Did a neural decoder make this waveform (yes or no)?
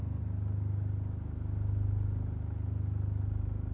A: no